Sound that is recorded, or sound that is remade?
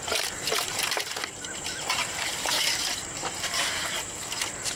remade